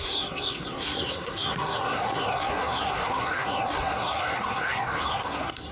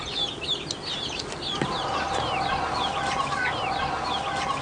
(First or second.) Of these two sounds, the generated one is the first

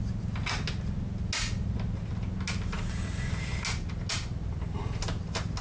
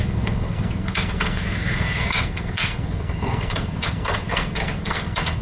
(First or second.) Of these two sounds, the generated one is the second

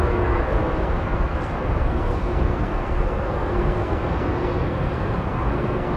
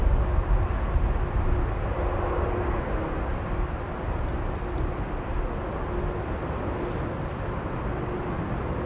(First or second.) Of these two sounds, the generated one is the first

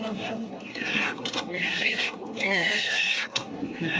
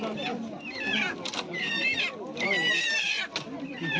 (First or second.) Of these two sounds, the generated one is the first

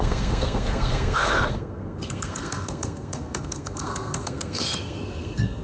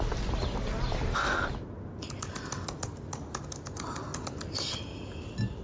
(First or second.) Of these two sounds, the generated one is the first